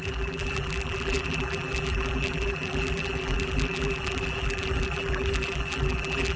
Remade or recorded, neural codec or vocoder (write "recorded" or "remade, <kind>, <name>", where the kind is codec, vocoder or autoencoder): remade, vocoder, BigVGAN v2